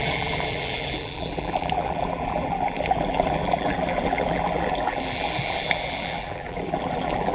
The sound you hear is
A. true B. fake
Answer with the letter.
B